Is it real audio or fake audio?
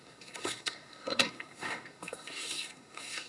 fake